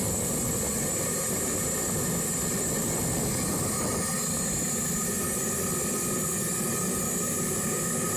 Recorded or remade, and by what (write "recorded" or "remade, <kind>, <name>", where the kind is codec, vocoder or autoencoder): recorded